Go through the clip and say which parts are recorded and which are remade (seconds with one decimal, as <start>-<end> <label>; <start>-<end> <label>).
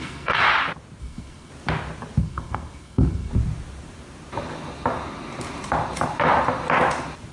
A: 0.0-0.4 remade; 0.4-1.0 recorded; 1.0-1.5 remade; 1.5-2.2 recorded; 2.2-3.3 remade; 3.3-7.3 recorded